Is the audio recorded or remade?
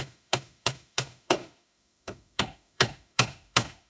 remade